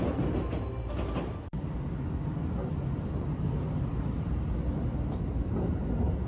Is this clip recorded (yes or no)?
yes